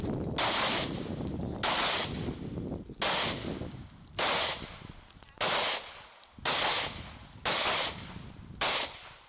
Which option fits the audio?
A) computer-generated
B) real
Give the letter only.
B